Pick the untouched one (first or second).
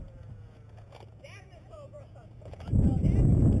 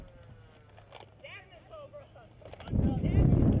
second